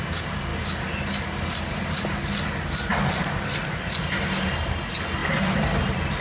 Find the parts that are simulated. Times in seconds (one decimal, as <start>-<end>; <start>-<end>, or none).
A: none